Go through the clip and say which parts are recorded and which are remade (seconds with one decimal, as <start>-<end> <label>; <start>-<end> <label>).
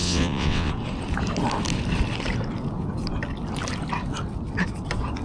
0.0-0.7 remade; 0.7-5.2 recorded